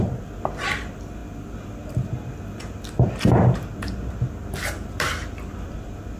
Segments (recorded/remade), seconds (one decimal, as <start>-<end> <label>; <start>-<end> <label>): 0.0-6.2 recorded